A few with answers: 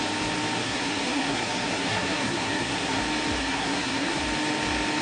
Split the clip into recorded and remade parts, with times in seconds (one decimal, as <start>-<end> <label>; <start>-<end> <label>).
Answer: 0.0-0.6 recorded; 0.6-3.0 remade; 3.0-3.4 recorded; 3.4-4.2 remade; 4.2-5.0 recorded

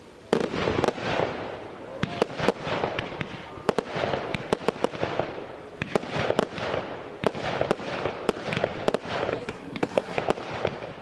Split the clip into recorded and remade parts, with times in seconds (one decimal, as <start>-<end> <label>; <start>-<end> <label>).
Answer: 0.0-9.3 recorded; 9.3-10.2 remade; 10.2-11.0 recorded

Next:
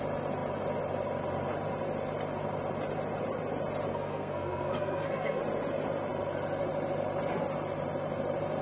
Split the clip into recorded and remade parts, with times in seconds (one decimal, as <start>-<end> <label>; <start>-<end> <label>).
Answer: 0.0-3.9 recorded; 3.9-5.4 remade; 5.4-8.6 recorded

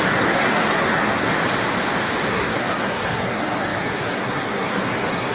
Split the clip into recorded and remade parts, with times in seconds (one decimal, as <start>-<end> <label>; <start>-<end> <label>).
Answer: 0.0-1.3 remade; 1.3-2.3 recorded; 2.3-5.3 remade

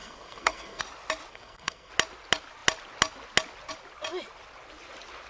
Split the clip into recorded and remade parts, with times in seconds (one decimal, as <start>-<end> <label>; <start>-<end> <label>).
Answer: 0.0-0.8 remade; 0.8-1.3 recorded; 1.3-1.9 remade; 1.9-5.3 recorded